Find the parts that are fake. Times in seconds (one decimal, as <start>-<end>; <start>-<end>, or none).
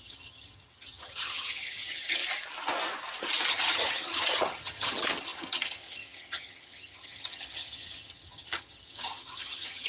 0.0-2.2; 3.5-9.9